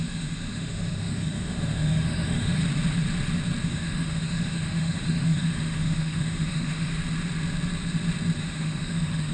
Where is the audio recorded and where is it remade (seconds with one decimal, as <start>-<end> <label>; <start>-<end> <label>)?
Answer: 0.0-2.6 remade; 2.6-3.6 recorded; 3.6-6.9 remade; 6.9-8.4 recorded; 8.4-9.3 remade